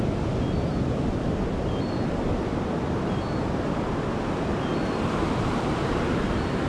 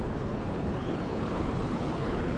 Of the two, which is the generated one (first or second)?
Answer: second